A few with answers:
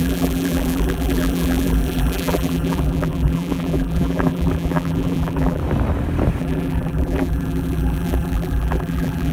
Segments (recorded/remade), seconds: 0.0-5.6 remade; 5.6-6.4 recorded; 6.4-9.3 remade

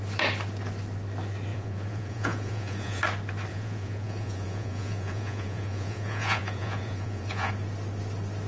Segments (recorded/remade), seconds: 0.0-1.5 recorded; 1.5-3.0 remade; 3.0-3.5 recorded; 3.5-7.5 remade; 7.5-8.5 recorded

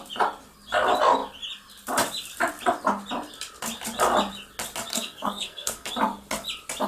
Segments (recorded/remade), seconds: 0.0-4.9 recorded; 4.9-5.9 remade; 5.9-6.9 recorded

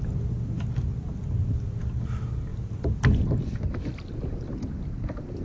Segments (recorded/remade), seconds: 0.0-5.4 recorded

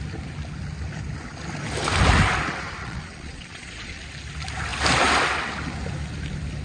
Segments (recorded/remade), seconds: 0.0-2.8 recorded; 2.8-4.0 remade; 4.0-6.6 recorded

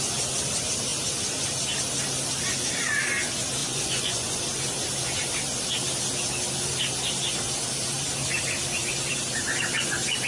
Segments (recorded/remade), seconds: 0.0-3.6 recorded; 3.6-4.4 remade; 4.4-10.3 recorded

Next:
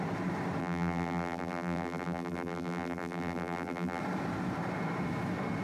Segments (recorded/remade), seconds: 0.0-0.6 recorded; 0.6-4.0 remade; 4.0-5.6 recorded